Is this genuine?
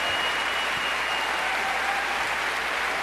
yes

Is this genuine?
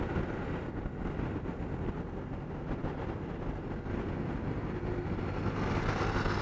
yes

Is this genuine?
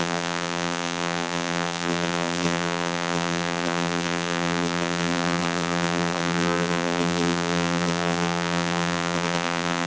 no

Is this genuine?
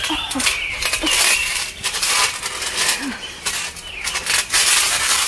yes